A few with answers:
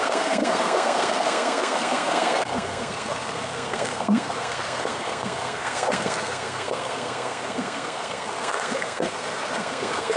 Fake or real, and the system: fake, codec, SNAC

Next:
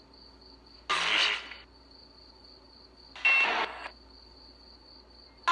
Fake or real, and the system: real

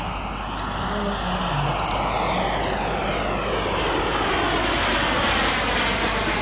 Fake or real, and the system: real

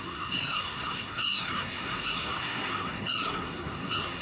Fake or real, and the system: fake, codec, SNAC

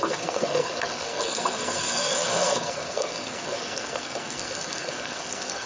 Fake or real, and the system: fake, codec, SNAC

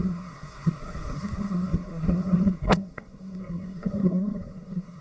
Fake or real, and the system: fake, codec, SNAC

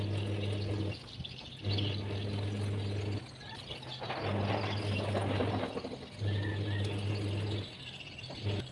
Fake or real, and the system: real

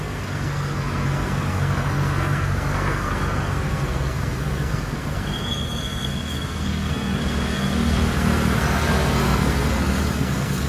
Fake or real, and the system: fake, codec, SNAC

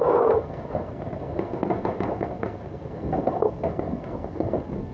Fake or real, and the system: fake, codec, SNAC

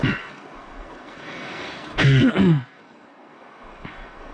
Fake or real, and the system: fake, codec, SNAC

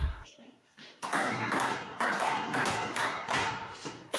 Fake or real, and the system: fake, codec, SNAC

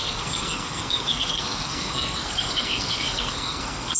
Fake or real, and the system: fake, codec, SNAC